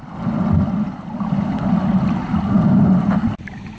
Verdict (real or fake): real